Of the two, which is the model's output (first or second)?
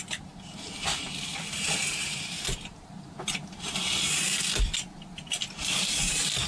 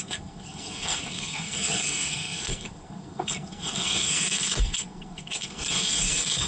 second